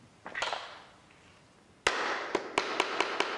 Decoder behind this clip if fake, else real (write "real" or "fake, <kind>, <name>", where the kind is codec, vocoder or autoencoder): real